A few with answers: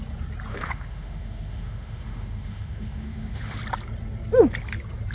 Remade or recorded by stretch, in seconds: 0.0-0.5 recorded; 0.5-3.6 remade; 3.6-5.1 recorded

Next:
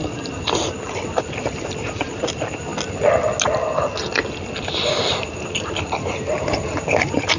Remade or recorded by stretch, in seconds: 0.0-2.7 remade; 2.7-4.9 recorded; 4.9-7.4 remade